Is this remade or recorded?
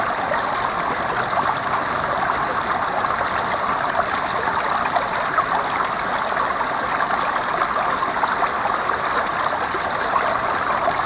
recorded